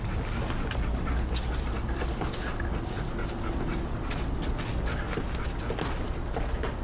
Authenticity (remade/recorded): recorded